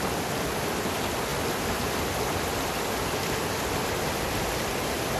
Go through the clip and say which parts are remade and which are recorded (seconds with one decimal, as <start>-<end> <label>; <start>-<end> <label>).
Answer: 0.0-5.2 recorded